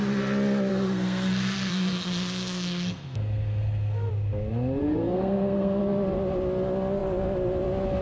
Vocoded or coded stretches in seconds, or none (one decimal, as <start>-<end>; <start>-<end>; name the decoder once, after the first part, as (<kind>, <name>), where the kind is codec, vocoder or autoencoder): 0.7-4.1 (codec, SNAC); 4.8-5.8